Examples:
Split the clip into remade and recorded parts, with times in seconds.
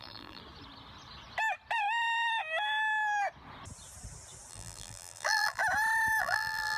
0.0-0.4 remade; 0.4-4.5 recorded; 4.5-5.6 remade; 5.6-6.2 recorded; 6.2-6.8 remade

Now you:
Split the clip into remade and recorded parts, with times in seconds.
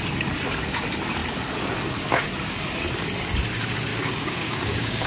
0.0-3.9 recorded; 3.9-5.1 remade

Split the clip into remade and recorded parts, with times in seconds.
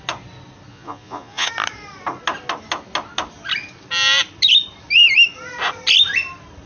0.0-0.7 recorded; 0.7-1.5 remade; 1.5-6.7 recorded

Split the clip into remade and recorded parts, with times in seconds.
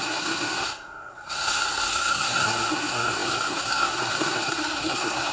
0.0-5.3 remade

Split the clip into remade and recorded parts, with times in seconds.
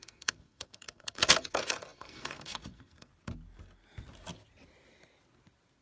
0.0-3.1 remade; 3.1-5.8 recorded